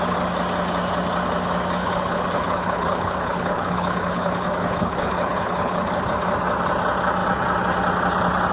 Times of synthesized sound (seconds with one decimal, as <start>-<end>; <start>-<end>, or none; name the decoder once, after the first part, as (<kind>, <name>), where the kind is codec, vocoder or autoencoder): 1.8-6.0 (codec, HILCodec)